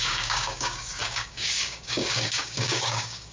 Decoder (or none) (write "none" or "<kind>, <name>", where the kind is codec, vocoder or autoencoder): codec, DAC